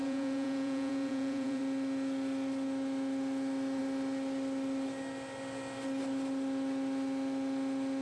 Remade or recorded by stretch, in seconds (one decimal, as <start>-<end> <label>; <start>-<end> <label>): 0.0-1.6 remade; 1.6-8.0 recorded